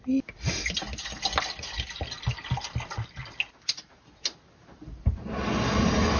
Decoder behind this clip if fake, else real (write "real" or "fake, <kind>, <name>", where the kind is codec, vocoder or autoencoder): real